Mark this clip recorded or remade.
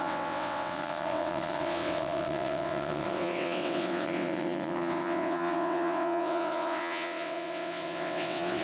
remade